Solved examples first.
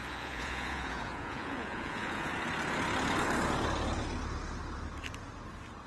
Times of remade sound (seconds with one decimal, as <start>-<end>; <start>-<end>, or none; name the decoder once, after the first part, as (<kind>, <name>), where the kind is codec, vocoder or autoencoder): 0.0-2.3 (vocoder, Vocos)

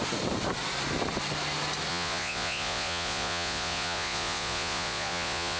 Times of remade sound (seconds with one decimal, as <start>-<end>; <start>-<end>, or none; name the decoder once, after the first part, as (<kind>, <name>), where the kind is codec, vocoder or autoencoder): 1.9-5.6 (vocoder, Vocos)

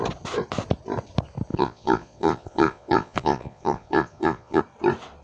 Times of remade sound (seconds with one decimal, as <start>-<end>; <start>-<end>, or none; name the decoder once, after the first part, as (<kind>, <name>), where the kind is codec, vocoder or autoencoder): 1.5-4.6 (vocoder, Vocos)

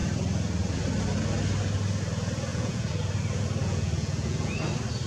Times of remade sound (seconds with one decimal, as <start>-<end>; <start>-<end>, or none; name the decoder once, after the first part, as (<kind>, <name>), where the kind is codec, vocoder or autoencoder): 2.5-3.0 (vocoder, Vocos); 3.6-4.5

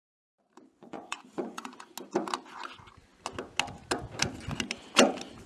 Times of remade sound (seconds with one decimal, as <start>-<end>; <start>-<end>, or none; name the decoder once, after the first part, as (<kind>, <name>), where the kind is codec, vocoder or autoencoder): 0.8-1.9 (vocoder, Vocos)

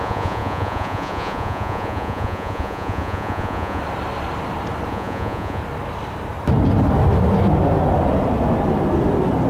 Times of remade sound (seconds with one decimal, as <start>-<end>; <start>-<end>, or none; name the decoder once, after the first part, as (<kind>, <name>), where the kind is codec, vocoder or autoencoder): 0.0-3.8 (vocoder, Vocos); 4.9-5.6